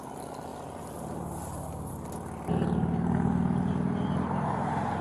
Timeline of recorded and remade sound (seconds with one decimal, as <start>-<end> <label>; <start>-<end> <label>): 0.0-5.0 recorded